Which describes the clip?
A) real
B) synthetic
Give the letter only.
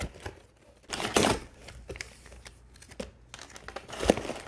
A